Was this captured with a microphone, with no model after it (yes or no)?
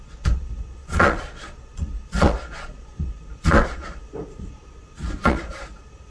no